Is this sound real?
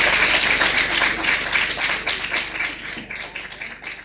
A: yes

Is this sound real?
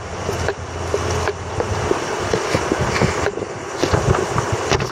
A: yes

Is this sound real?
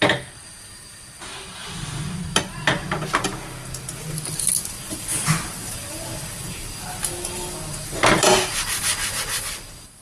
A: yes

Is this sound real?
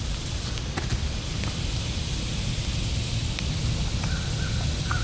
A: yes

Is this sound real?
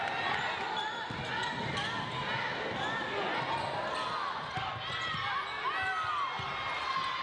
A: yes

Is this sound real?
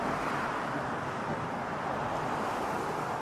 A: yes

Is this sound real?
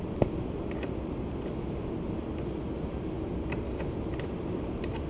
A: yes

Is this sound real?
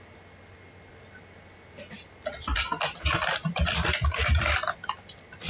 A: yes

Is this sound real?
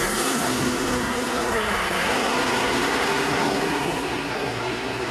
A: no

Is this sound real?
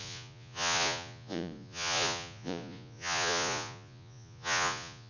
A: no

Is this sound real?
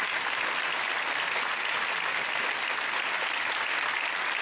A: yes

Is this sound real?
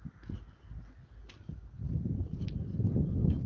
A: yes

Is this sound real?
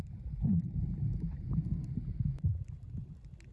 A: yes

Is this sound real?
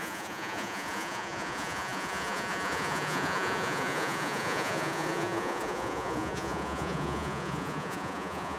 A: no